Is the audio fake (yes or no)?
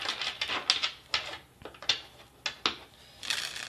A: no